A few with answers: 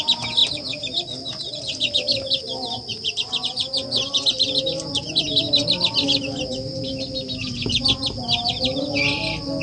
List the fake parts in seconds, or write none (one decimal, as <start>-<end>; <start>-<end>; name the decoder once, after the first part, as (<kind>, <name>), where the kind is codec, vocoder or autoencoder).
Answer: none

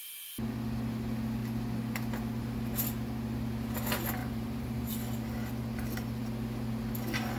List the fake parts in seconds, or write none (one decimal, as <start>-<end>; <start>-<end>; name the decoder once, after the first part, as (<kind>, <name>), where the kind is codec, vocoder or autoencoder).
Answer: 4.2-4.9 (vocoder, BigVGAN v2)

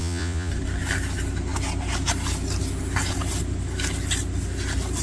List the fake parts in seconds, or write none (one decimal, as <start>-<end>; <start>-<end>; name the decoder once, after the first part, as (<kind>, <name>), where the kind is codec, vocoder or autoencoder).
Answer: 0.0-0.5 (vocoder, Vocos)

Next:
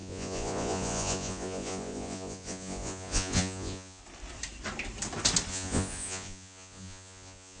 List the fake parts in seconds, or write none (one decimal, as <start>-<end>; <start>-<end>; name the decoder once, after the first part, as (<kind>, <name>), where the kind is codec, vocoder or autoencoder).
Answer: 0.0-4.0 (vocoder, Vocos); 5.5-7.6

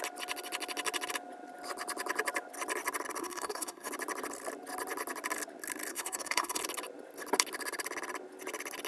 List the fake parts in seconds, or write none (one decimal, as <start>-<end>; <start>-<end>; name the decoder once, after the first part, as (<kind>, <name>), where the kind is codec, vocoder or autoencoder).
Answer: 3.2-3.9 (codec, SNAC); 5.9-6.6

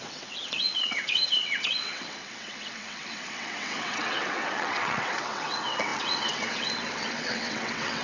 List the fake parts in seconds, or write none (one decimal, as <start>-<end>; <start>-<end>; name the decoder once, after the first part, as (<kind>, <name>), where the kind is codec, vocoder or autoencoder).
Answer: 0.0-8.0 (vocoder, WaveNeXt)

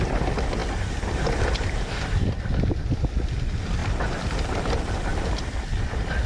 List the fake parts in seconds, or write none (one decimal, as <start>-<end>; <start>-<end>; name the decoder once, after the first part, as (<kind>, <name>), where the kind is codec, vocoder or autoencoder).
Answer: none